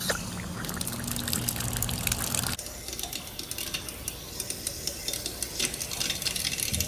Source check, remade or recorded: recorded